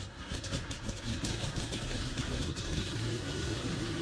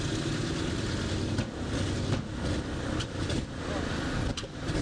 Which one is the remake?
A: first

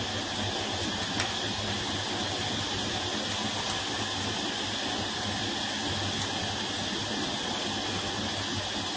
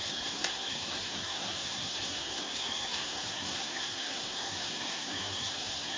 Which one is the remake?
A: second